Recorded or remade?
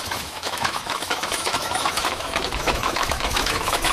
remade